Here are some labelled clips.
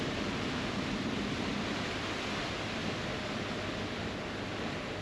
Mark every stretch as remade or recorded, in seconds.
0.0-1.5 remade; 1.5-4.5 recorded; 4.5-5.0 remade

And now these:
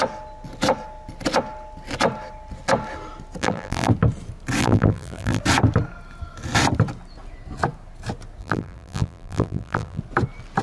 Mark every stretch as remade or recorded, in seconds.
0.0-3.4 recorded; 3.4-3.9 remade; 3.9-4.6 recorded; 4.6-5.4 remade; 5.4-8.4 recorded; 8.4-10.0 remade; 10.0-10.6 recorded